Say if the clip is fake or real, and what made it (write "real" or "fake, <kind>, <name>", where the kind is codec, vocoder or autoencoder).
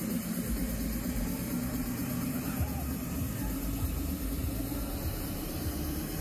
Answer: fake, vocoder, BigVGAN v2